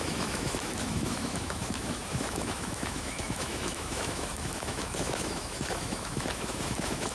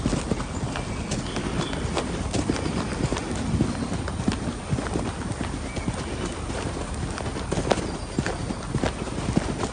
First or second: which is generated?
first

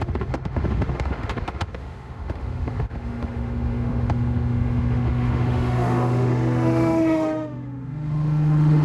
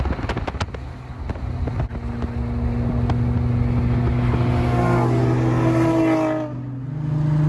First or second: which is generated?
first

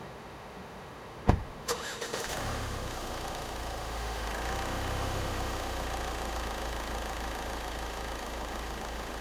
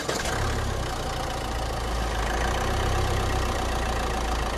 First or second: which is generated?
first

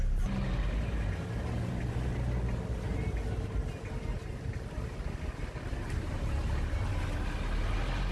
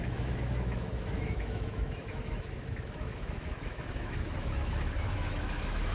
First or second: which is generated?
second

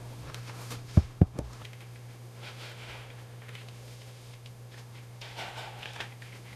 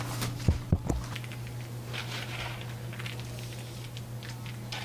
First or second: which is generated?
first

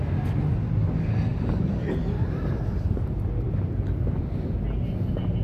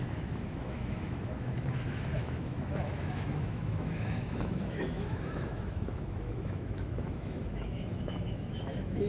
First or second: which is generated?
second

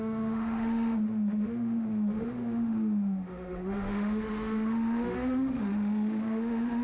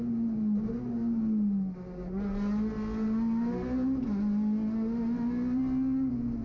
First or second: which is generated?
first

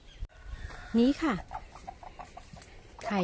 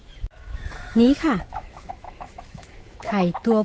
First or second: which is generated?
second